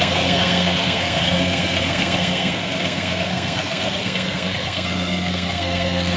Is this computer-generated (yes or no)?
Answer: yes